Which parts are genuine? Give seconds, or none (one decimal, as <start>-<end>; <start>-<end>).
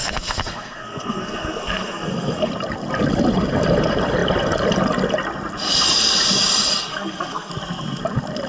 2.5-6.9; 7.5-8.5